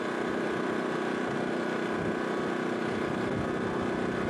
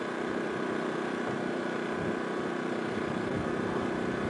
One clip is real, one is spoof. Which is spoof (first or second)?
second